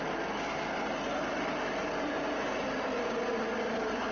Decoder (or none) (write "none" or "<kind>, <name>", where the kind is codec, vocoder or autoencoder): none